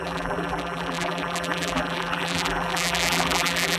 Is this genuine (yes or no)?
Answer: no